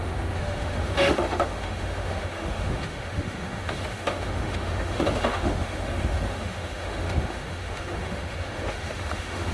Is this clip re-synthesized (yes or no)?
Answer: yes